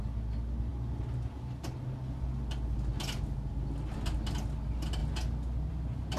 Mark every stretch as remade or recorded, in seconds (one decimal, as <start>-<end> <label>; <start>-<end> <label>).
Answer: 0.0-6.2 recorded